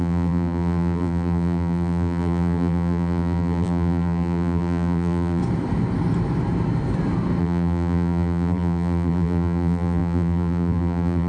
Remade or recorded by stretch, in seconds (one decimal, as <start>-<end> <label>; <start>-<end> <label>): 0.0-5.4 remade; 5.4-7.4 recorded; 7.4-11.3 remade